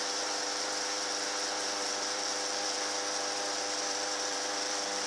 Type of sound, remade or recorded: remade